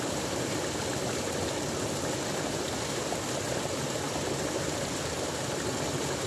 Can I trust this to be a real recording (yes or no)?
yes